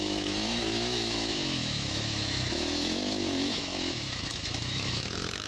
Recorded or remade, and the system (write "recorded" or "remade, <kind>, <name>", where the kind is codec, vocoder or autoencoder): remade, autoencoder, DAC-VAE